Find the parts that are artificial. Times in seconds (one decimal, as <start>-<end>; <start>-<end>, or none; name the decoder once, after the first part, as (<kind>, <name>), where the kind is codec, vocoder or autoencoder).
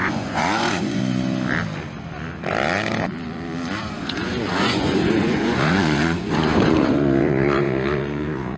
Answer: 0.0-1.0 (vocoder, Vocos); 4.0-8.6